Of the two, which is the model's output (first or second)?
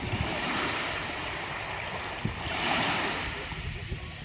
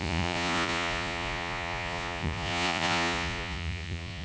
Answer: second